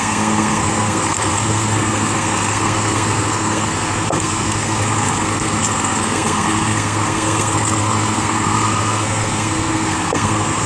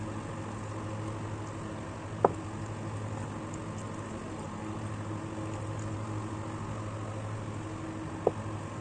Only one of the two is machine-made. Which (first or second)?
first